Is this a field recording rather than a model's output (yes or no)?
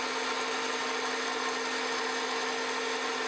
yes